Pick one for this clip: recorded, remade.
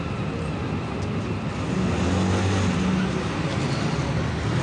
recorded